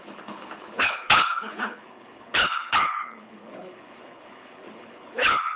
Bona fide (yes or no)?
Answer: no